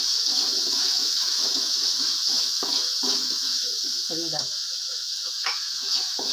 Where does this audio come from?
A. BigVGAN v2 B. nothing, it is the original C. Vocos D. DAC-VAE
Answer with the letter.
D